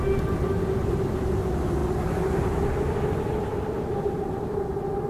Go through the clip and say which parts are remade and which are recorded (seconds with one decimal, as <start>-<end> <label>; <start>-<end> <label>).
0.0-5.1 recorded